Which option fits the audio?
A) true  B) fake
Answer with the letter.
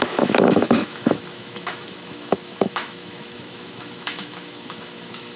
B